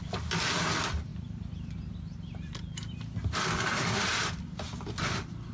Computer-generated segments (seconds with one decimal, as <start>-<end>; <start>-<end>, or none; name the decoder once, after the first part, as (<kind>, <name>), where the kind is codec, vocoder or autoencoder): none